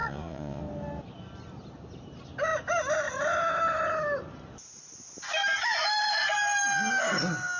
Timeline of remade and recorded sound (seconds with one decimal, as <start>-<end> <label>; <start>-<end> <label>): 0.0-0.6 remade; 0.6-7.6 recorded